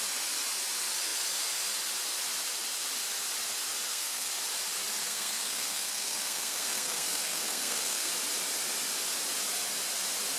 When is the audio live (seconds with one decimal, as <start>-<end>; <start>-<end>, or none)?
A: 0.0-3.9; 4.4-5.0; 8.1-10.4